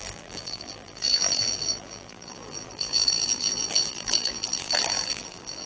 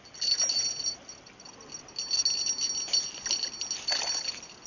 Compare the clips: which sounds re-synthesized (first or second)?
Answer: first